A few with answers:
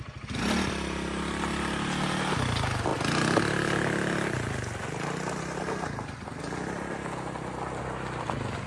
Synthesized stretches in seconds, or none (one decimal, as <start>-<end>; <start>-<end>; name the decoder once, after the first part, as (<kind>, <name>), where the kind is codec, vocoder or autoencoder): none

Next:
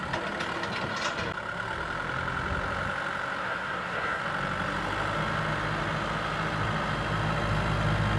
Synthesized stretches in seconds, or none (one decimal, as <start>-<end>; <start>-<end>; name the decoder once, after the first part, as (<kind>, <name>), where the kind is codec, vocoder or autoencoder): 3.4-4.2 (codec, SNAC)

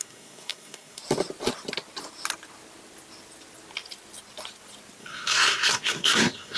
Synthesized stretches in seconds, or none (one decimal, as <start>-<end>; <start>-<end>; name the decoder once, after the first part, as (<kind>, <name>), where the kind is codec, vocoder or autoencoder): 0.0-1.0 (codec, SNAC); 5.0-6.6

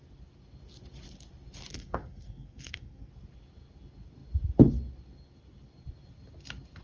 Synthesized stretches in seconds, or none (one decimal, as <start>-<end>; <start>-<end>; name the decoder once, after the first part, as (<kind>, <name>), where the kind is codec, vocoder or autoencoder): 1.7-3.1 (codec, SNAC)

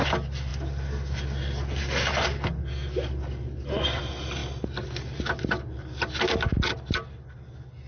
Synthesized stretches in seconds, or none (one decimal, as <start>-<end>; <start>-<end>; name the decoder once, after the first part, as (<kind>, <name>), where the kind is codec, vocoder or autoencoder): none

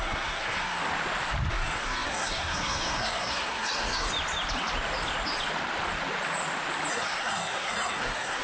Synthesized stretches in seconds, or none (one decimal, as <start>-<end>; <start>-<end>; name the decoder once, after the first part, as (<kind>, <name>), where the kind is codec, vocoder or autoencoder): 0.0-0.8 (codec, SNAC); 1.5-4.1; 6.9-8.4

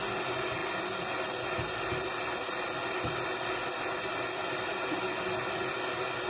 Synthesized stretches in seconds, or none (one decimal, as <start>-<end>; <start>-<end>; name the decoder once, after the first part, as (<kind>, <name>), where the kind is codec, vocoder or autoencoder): none

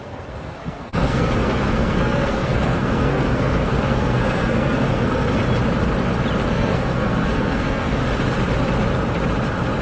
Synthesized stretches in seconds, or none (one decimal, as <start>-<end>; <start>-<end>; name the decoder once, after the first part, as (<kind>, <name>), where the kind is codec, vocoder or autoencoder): 0.0-5.4 (codec, SNAC); 6.5-8.0